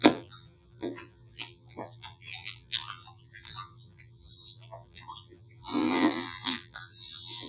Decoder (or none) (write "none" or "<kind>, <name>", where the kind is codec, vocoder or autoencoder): vocoder, BigVGAN v2